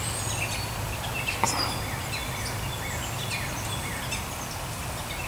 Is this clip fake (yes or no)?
no